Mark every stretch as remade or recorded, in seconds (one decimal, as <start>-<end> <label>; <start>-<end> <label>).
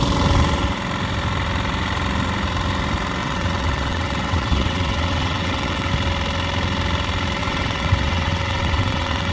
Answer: 0.0-3.2 recorded; 3.2-5.9 remade; 5.9-7.4 recorded; 7.4-9.3 remade